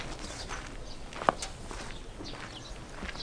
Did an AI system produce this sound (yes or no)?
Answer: no